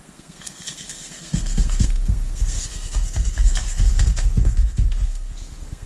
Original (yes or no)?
no